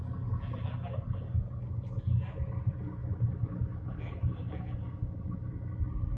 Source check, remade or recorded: recorded